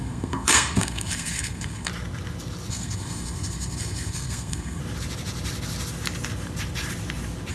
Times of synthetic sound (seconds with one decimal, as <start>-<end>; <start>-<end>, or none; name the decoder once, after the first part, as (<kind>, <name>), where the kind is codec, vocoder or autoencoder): 0.0-1.9 (codec, SNAC); 2.7-4.8